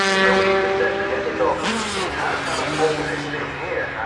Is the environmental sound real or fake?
real